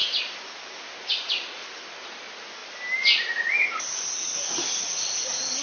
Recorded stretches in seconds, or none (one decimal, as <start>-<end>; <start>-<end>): 0.0-5.6